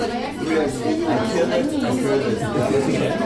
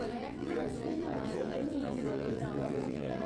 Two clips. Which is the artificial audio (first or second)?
second